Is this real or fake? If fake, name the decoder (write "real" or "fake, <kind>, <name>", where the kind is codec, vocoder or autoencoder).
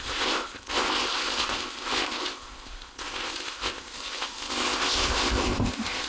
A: fake, codec, ZipCodec